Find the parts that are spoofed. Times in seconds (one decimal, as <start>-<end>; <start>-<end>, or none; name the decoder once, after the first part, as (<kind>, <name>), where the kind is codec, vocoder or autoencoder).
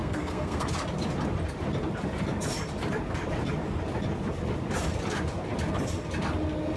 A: 0.0-0.7 (codec, SNAC)